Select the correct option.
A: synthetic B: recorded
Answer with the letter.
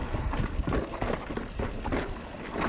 B